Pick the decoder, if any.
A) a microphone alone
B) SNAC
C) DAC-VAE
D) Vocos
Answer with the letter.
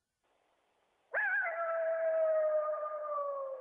A